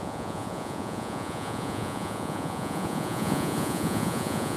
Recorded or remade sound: remade